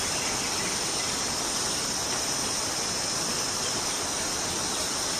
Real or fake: real